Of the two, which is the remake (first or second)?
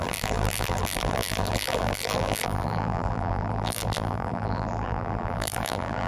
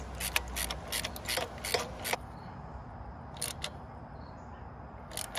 first